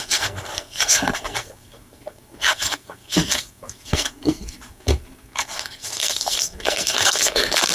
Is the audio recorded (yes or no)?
no